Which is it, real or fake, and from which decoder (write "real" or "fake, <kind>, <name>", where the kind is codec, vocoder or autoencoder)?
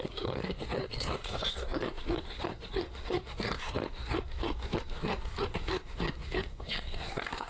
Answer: fake, codec, SNAC